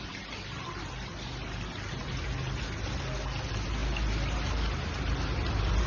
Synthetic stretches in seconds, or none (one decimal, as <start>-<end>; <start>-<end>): none